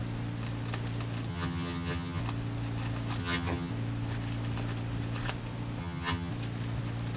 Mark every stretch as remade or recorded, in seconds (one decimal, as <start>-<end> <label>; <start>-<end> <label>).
0.0-1.3 recorded; 1.3-2.2 remade; 2.2-3.2 recorded; 3.2-3.7 remade; 3.7-5.8 recorded; 5.8-6.3 remade; 6.3-7.2 recorded